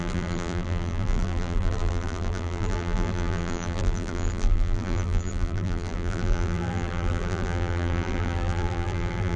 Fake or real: fake